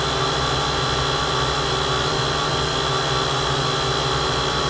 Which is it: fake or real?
real